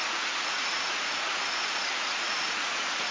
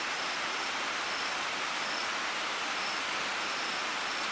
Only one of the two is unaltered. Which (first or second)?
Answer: second